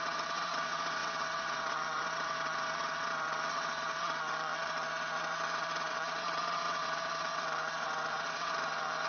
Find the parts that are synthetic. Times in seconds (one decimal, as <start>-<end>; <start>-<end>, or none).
0.0-9.1